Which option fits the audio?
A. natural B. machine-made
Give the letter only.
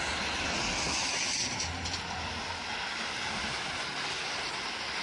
A